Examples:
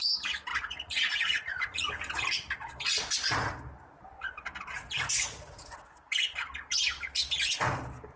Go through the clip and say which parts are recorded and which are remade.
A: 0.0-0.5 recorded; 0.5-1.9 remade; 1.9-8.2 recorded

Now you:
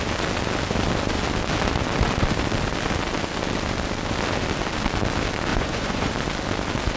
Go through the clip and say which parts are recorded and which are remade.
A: 0.0-5.5 recorded; 5.5-6.1 remade; 6.1-7.0 recorded

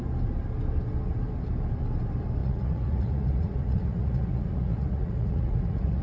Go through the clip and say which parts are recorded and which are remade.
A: 0.0-2.4 recorded; 2.4-6.0 remade

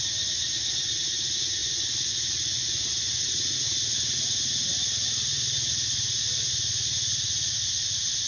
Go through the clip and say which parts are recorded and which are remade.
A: 0.0-1.6 recorded; 1.6-3.2 remade; 3.2-8.3 recorded

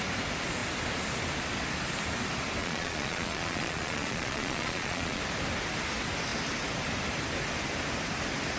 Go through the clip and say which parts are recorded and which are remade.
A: 0.0-2.6 recorded; 2.6-5.2 remade; 5.2-8.6 recorded

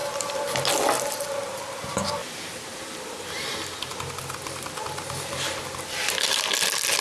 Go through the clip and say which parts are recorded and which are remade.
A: 0.0-7.0 recorded